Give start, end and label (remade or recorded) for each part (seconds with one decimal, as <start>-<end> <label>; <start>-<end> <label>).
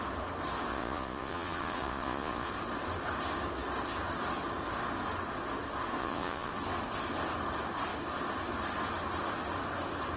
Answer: 0.0-0.7 recorded; 0.7-2.5 remade; 2.5-6.0 recorded; 6.0-6.5 remade; 6.5-10.2 recorded